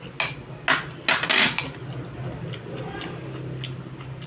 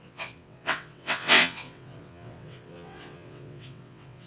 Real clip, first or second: first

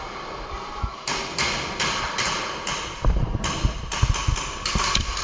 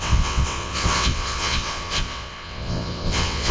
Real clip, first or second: first